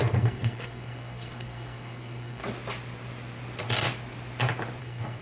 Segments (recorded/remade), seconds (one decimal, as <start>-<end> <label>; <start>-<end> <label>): 0.0-2.4 remade; 2.4-4.8 recorded; 4.8-5.2 remade

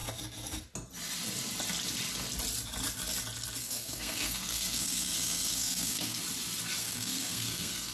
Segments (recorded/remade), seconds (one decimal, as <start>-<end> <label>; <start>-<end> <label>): 0.0-3.6 recorded; 3.6-6.2 remade; 6.2-6.8 recorded; 6.8-7.9 remade

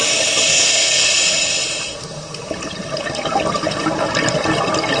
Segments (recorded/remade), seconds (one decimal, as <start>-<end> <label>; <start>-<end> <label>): 0.0-0.5 recorded; 0.5-1.1 remade; 1.1-5.0 recorded

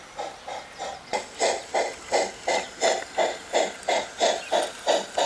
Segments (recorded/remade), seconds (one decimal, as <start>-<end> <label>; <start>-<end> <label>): 0.0-5.3 recorded

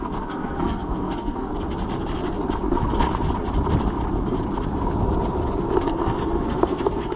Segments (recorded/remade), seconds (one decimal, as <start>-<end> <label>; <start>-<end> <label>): 0.0-1.5 remade; 1.5-5.8 recorded; 5.8-7.2 remade

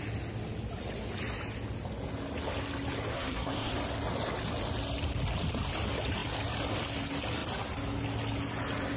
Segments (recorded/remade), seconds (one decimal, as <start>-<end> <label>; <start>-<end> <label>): 0.0-3.1 recorded; 3.1-3.7 remade; 3.7-9.0 recorded

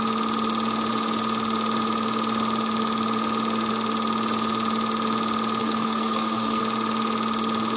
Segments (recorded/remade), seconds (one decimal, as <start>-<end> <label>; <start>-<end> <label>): 0.0-5.6 recorded; 5.6-6.6 remade; 6.6-7.8 recorded